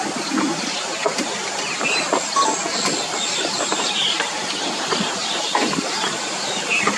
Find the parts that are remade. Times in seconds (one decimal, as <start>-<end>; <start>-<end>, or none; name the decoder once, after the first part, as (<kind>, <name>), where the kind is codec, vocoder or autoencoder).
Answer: 0.0-2.1 (vocoder, BigVGAN v2); 3.5-7.0